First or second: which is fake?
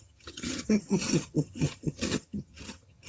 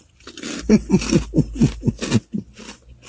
first